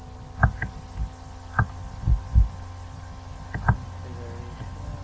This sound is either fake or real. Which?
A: real